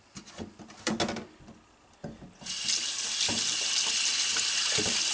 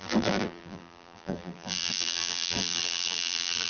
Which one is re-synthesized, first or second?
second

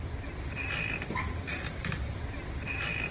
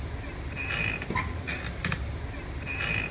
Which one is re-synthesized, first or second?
first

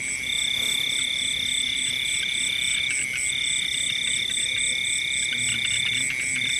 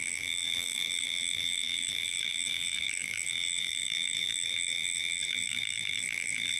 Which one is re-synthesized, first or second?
second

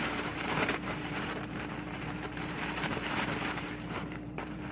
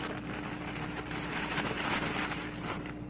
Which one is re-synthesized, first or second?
first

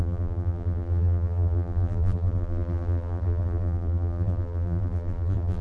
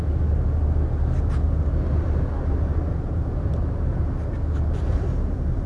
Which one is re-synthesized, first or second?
first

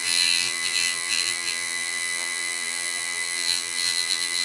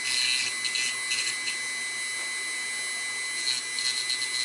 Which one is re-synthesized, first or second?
first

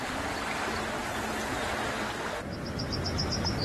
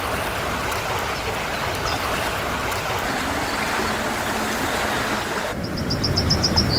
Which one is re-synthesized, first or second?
second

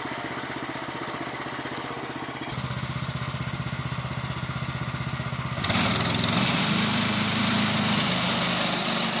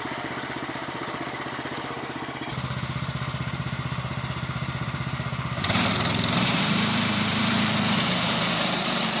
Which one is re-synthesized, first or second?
second